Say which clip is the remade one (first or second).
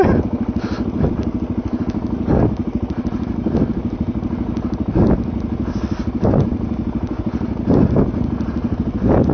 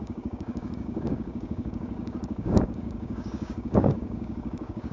second